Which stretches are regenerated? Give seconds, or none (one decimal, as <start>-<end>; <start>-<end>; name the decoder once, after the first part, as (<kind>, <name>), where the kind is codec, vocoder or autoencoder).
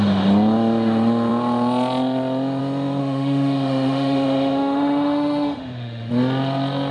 3.0-6.1 (autoencoder, DAC-VAE)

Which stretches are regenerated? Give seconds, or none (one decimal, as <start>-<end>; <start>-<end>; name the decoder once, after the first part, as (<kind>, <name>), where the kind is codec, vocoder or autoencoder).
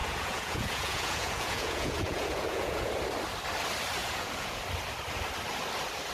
0.0-2.9 (vocoder, Vocos); 4.0-4.6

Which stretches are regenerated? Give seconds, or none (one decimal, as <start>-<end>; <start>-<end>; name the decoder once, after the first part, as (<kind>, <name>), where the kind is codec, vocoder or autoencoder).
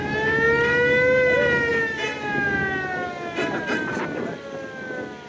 none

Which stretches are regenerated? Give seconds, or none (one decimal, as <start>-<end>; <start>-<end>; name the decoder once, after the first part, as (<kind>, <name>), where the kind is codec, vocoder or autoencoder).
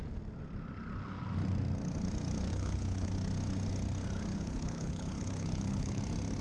2.5-3.1 (codec, HILCodec); 4.3-6.0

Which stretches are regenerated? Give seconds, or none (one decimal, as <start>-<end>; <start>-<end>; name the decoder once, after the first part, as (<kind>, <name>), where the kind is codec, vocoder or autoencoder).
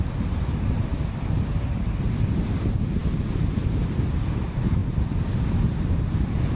none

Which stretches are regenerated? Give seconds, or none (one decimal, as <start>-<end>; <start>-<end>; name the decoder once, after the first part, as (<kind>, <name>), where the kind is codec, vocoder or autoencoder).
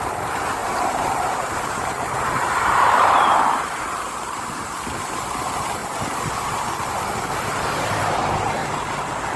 0.0-5.8 (vocoder, BigVGAN v2); 7.9-8.6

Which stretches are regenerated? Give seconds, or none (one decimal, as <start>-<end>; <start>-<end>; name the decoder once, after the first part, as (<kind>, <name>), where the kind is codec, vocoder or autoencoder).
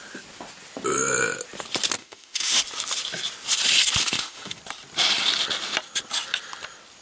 2.0-2.6 (autoencoder, DAC-VAE); 4.0-4.6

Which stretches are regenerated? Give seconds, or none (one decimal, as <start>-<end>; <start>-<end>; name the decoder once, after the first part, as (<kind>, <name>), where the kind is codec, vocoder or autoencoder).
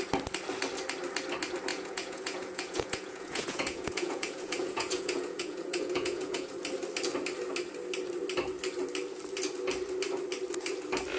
1.7-6.5 (vocoder, Vocos)